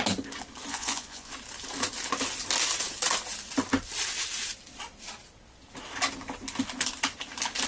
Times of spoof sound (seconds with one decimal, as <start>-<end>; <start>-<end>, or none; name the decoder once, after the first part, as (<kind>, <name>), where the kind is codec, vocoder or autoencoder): 0.7-1.3 (vocoder, Vocos)

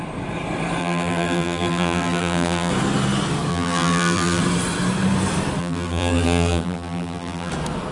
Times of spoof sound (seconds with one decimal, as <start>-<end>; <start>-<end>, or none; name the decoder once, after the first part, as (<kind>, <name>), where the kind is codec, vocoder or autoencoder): 0.8-2.7 (vocoder, BigVGAN v2); 3.5-4.4; 5.6-7.5

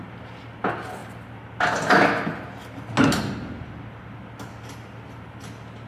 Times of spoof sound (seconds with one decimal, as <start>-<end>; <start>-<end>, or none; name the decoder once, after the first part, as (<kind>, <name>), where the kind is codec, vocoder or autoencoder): none

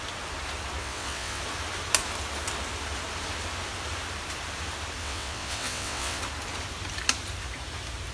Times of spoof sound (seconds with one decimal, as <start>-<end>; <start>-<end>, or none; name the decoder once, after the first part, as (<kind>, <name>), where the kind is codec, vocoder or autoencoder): 0.8-1.4 (vocoder, WaveNeXt); 5.0-6.2

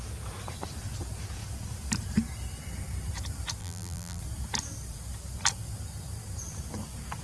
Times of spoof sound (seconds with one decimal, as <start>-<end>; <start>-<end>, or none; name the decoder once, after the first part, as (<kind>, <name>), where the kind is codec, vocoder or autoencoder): 3.6-4.2 (vocoder, BigVGAN v2)

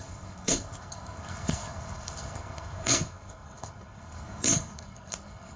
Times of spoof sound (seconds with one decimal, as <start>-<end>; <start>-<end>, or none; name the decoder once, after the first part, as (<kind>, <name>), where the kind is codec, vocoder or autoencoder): 0.0-5.6 (codec, SNAC)